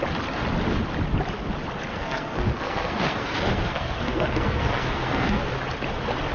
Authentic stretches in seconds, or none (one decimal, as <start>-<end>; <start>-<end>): 0.0-1.9; 5.5-6.3